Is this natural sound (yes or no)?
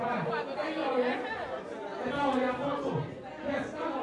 yes